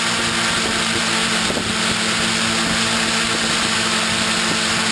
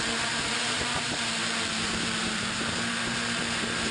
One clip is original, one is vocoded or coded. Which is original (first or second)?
first